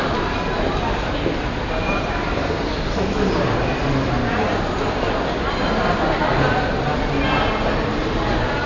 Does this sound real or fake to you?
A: real